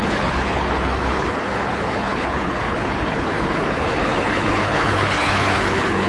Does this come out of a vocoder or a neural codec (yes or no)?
yes